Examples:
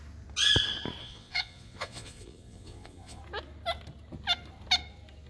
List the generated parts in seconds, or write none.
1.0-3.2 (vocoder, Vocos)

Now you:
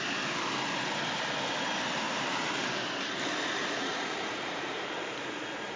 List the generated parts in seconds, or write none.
3.6-4.9 (vocoder, Vocos)

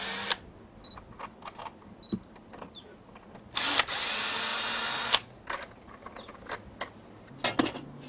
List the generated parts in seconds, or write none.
none

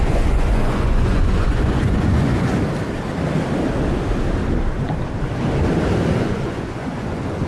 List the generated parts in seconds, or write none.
0.0-2.6 (vocoder, Vocos); 6.2-7.5

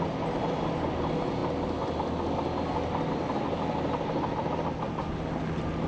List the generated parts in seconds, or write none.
none

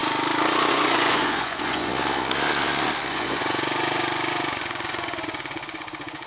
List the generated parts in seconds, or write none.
0.7-1.9 (vocoder, Vocos); 3.1-6.3

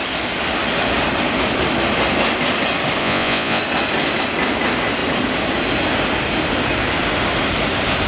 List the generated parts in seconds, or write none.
3.0-3.6 (vocoder, Vocos)